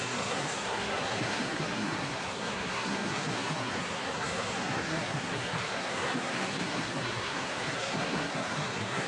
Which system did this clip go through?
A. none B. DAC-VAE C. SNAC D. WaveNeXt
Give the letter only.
C